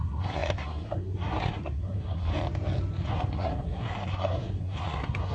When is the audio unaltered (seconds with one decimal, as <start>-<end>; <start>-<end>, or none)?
2.3-3.1